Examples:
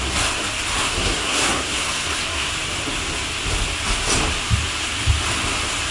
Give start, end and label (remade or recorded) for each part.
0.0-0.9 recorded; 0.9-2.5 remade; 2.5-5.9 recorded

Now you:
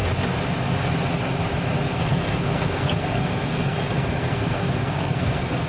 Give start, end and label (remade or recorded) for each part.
0.0-1.9 recorded; 1.9-5.7 remade